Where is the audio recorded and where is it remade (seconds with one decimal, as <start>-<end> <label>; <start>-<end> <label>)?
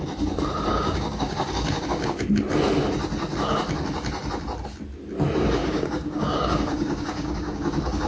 0.0-0.7 recorded; 0.7-2.4 remade; 2.4-5.6 recorded; 5.6-8.1 remade